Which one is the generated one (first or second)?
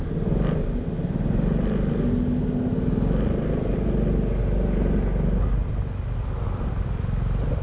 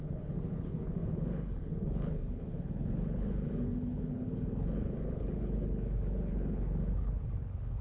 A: second